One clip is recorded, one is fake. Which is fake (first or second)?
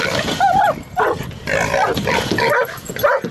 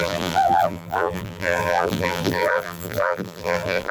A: second